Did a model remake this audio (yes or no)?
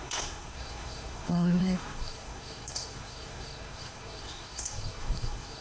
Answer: yes